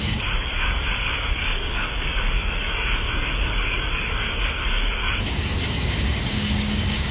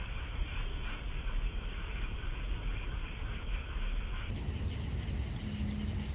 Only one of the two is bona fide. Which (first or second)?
second